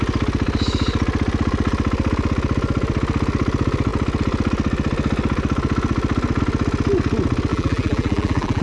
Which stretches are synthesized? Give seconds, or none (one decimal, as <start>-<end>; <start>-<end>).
7.5-8.6